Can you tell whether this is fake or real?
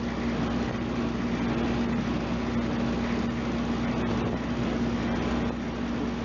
real